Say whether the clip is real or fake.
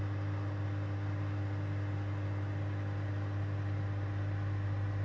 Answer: real